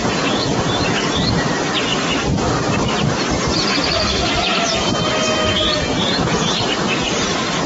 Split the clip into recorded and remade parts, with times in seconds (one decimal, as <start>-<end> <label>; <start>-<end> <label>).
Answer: 0.0-0.7 remade; 0.7-6.0 recorded; 6.0-6.5 remade; 6.5-7.7 recorded